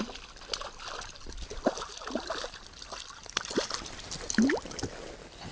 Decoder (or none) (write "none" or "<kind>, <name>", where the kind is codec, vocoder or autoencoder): none